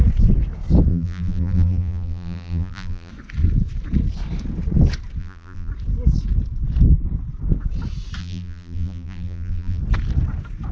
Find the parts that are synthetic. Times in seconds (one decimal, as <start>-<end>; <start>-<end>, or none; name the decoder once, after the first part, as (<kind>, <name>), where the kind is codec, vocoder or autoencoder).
0.9-3.1 (vocoder, BigVGAN v2); 5.2-5.7; 8.2-9.8